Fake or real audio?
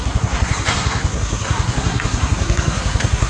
fake